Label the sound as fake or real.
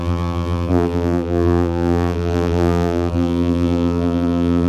fake